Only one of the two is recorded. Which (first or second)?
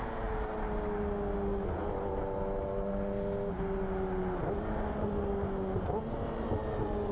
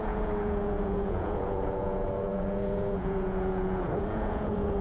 first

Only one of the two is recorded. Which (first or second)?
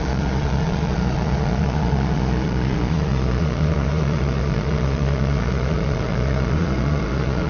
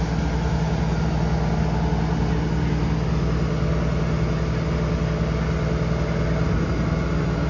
second